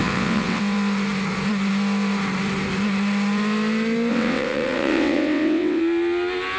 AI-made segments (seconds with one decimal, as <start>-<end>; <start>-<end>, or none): 0.0-0.6; 4.1-5.8

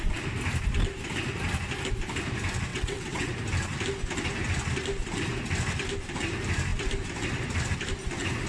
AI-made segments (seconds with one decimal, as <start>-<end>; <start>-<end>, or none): 2.7-3.3